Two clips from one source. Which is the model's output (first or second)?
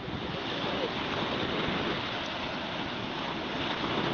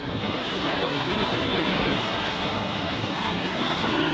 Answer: second